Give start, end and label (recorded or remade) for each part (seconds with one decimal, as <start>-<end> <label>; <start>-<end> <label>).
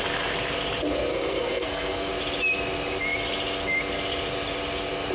0.0-1.1 recorded; 1.1-2.1 remade; 2.1-5.1 recorded